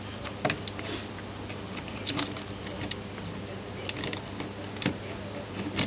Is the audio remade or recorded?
recorded